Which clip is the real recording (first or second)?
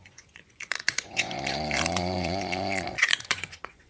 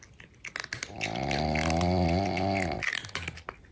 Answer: second